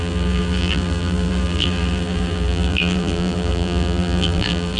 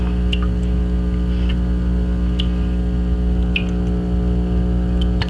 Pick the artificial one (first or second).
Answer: first